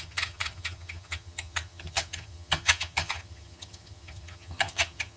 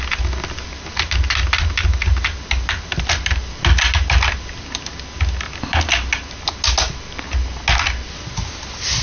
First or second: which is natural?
second